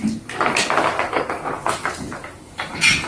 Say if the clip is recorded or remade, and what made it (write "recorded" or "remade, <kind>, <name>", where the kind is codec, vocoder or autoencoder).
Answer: recorded